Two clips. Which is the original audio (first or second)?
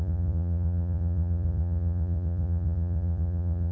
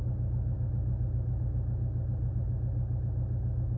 second